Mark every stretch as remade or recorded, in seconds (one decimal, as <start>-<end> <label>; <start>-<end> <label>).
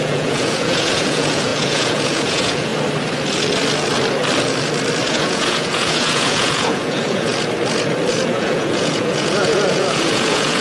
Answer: 0.0-2.7 remade; 2.7-5.1 recorded; 5.1-7.3 remade; 7.3-8.1 recorded; 8.1-10.6 remade